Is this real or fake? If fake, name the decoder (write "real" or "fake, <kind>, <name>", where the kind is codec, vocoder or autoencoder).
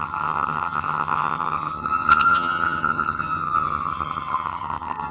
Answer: fake, vocoder, HiFi-GAN